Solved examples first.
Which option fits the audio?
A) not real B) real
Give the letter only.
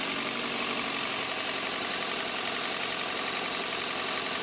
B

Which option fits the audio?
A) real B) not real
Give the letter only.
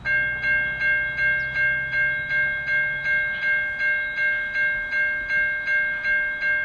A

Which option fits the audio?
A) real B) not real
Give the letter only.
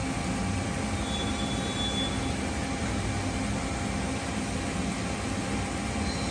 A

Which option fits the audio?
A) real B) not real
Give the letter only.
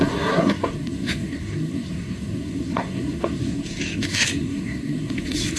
B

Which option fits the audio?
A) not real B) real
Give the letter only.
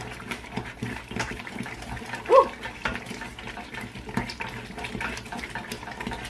B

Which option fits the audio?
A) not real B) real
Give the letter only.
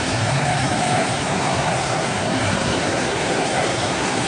A